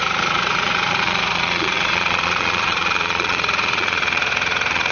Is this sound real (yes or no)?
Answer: no